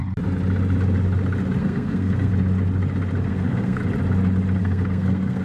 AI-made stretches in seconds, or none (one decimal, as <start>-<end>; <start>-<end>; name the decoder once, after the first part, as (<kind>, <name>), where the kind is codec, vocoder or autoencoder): 1.6-2.3 (codec, SNAC); 3.3-3.8; 4.6-5.4